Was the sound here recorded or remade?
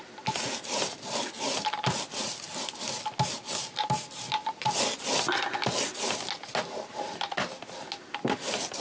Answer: recorded